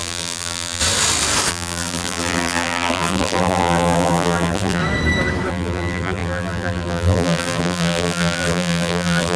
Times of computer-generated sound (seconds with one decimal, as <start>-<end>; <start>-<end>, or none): 0.0-0.8; 1.5-4.8; 5.5-9.4